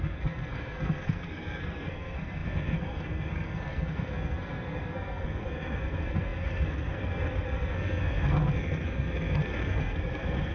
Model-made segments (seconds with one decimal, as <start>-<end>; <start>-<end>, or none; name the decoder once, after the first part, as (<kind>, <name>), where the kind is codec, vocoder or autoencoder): 0.0-10.5 (codec, SNAC)